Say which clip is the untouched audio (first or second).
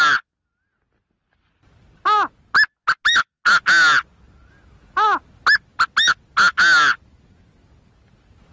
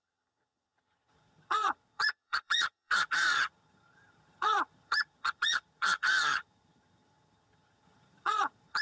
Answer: first